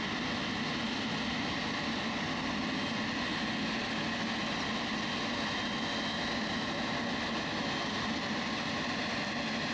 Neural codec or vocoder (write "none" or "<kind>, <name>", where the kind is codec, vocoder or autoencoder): none